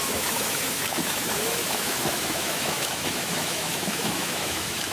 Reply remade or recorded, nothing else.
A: remade